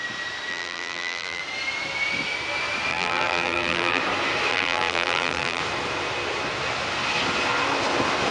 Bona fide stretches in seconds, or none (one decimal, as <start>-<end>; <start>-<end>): 0.0-0.5; 1.4-2.9; 4.0-4.5; 5.6-8.3